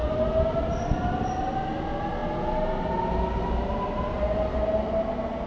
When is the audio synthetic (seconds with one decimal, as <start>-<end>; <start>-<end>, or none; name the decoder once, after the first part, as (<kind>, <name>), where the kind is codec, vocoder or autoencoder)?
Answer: none

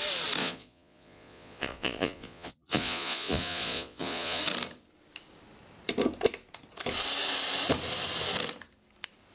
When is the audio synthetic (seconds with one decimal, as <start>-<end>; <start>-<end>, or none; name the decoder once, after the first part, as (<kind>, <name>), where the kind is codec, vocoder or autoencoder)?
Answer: 0.4-4.4 (vocoder, Vocos)